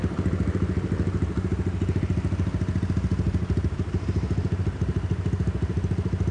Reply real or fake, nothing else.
real